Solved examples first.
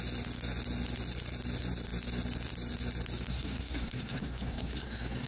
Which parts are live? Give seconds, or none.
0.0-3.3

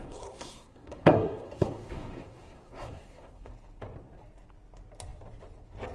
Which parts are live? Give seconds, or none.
3.5-5.9